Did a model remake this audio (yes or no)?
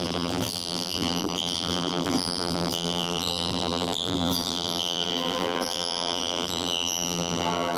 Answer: yes